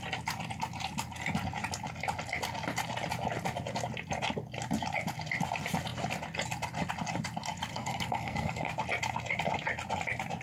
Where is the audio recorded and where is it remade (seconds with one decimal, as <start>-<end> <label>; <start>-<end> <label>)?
0.0-7.7 recorded; 7.7-8.7 remade; 8.7-10.4 recorded